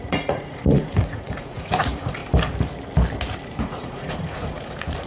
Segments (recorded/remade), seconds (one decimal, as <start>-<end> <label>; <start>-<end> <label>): 0.0-2.2 remade; 2.2-3.6 recorded; 3.6-5.1 remade